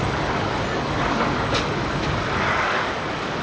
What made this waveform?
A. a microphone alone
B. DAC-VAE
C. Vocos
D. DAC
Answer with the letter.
D